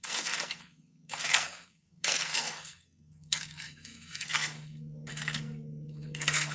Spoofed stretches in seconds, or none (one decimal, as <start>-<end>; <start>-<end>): 0.0-6.5